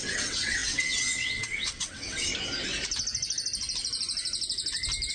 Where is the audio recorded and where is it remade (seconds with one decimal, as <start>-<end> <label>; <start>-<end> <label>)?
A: 0.0-2.3 remade; 2.3-5.1 recorded